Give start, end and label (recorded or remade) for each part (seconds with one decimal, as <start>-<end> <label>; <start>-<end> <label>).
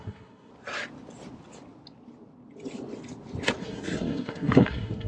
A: 0.0-0.5 remade; 0.5-3.6 recorded; 3.6-5.1 remade